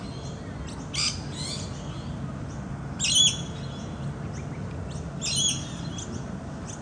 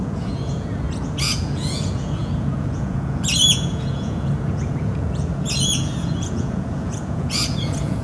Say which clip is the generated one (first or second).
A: second